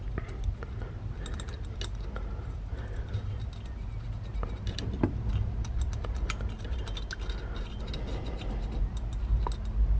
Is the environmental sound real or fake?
real